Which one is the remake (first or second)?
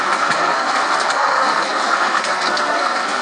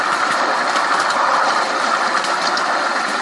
first